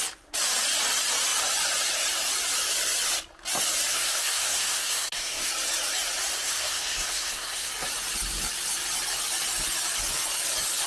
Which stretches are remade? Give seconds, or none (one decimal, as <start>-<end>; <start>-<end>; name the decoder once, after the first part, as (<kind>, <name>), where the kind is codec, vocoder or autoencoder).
3.9-5.5 (codec, SNAC); 6.3-7.7